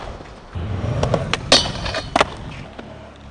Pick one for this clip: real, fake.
real